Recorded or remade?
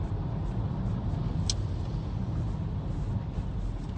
recorded